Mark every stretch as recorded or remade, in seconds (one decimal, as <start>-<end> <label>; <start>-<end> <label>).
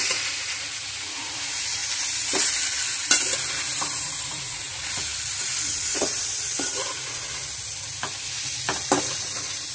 0.0-1.8 remade; 1.8-4.3 recorded; 4.3-5.1 remade; 5.1-5.7 recorded; 5.7-7.4 remade; 7.4-9.0 recorded; 9.0-9.7 remade